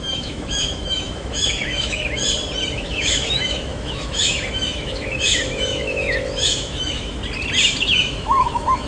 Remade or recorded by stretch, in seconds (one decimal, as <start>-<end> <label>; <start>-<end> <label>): 0.0-2.2 remade; 2.2-2.7 recorded; 2.7-7.2 remade; 7.2-7.8 recorded; 7.8-8.9 remade